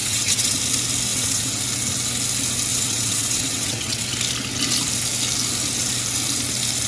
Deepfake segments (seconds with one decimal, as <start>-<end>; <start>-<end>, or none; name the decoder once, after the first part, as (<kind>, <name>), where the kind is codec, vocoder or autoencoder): 0.0-0.6 (vocoder, WaveNeXt); 1.1-1.6; 2.7-4.1